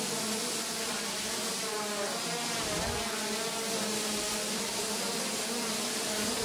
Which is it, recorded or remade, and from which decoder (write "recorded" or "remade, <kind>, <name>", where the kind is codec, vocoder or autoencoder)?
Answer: recorded